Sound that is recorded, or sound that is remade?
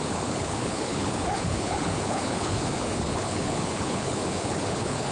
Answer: remade